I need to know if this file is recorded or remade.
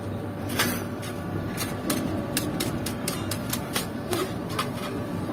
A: remade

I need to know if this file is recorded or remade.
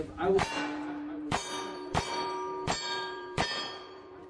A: remade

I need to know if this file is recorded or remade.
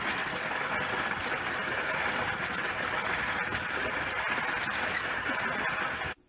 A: recorded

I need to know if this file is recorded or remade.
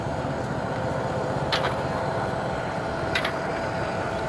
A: remade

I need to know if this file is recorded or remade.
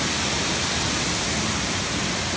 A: recorded